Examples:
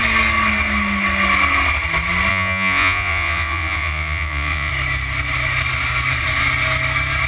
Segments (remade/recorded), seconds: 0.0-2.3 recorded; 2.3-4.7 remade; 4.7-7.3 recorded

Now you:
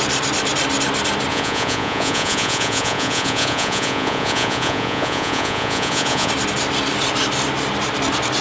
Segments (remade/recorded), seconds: 0.0-1.3 recorded; 1.3-6.3 remade; 6.3-8.4 recorded

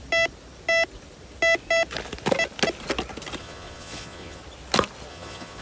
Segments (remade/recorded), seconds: 0.0-3.4 recorded; 3.4-4.4 remade; 4.4-5.1 recorded; 5.1-5.6 remade

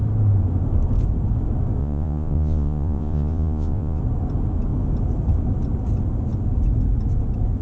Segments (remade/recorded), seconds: 0.0-1.8 recorded; 1.8-4.0 remade; 4.0-7.6 recorded

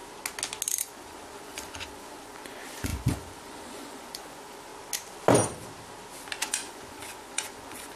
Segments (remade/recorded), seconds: 0.0-0.8 recorded; 0.8-4.7 remade; 4.7-6.4 recorded; 6.4-8.0 remade

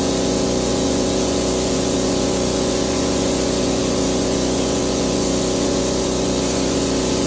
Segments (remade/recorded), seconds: 0.0-7.3 remade